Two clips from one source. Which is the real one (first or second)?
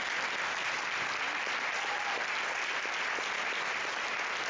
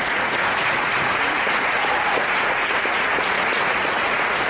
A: first